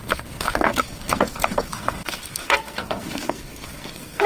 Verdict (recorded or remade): remade